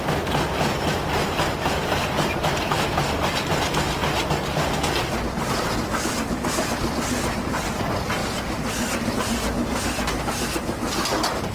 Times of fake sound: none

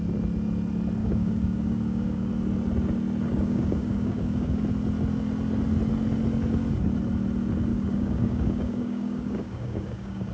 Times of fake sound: 1.0-2.3; 3.3-4.6; 7.7-10.3